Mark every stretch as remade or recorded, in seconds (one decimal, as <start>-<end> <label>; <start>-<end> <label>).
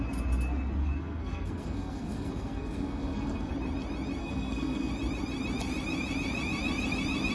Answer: 0.0-0.8 recorded; 0.8-3.5 remade; 3.5-4.2 recorded; 4.2-4.9 remade; 4.9-7.3 recorded